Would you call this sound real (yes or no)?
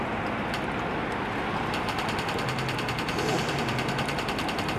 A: yes